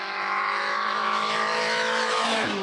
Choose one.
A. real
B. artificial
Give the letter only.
B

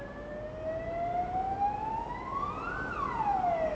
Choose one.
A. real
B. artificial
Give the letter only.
A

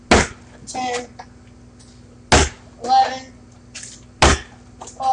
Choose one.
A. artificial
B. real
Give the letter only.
B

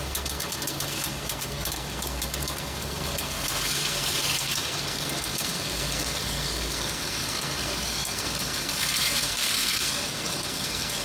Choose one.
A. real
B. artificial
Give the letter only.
B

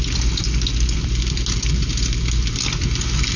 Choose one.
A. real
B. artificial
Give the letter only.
A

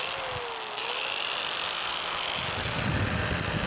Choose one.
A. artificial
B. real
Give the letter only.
B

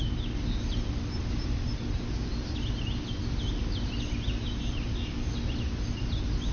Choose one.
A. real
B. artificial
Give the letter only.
A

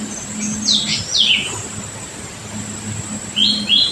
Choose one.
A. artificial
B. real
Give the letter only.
B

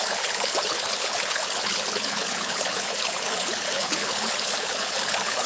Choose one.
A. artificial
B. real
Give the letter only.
A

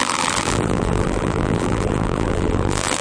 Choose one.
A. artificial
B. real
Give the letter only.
A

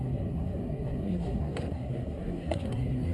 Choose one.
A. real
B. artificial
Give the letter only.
B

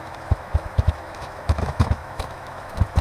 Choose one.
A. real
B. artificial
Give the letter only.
B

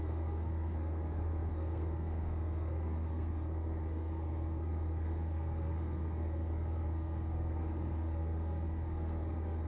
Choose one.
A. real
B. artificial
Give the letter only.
B